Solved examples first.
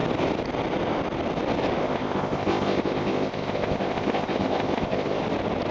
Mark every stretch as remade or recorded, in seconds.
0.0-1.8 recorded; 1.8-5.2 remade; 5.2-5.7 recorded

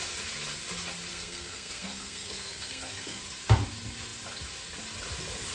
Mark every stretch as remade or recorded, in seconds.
0.0-1.1 recorded; 1.1-3.2 remade; 3.2-5.5 recorded

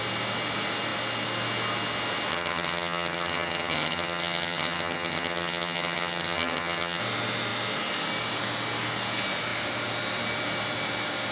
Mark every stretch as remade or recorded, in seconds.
0.0-2.3 recorded; 2.3-7.0 remade; 7.0-11.3 recorded

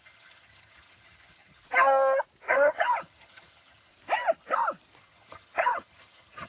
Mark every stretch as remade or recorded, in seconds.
0.0-1.6 remade; 1.6-2.5 recorded; 2.5-3.9 remade; 3.9-5.0 recorded; 5.0-6.5 remade

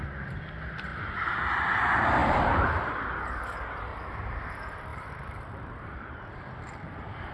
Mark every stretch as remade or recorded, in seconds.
0.0-2.2 recorded; 2.2-2.9 remade; 2.9-3.9 recorded; 3.9-4.5 remade; 4.5-4.9 recorded; 4.9-6.4 remade; 6.4-7.3 recorded

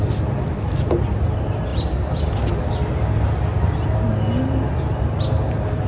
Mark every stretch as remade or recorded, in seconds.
0.0-5.9 recorded

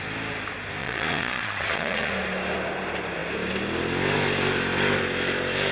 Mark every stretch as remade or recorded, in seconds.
0.0-0.8 recorded; 0.8-2.1 remade; 2.1-5.7 recorded